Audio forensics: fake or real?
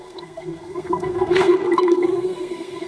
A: fake